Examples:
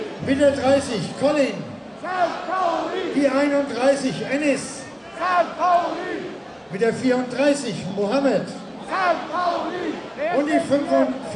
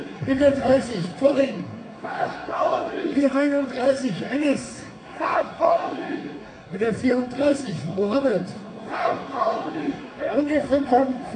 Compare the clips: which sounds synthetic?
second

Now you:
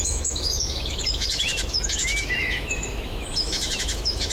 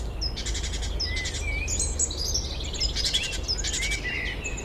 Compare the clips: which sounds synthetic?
first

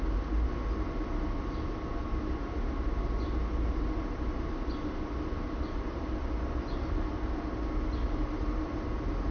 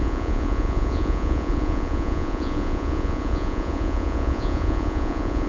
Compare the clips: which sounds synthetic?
second